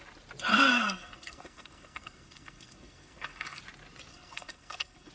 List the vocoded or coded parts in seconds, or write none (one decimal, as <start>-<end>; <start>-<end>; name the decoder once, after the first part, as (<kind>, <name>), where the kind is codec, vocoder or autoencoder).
0.5-3.6 (codec, SNAC); 4.1-5.1